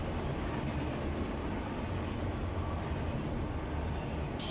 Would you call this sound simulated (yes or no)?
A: no